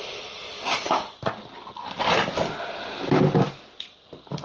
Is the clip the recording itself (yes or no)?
yes